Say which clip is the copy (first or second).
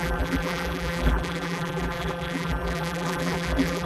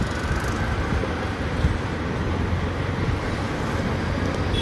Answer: first